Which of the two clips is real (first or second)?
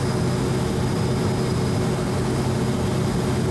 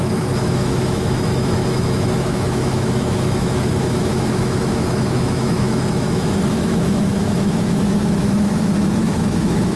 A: first